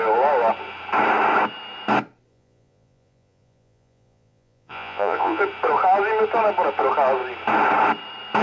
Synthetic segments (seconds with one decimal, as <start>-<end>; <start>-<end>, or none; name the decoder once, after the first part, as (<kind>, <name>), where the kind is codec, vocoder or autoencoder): 2.3-5.4 (vocoder, Vocos)